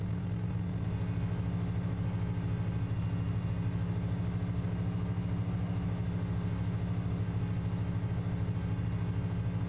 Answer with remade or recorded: recorded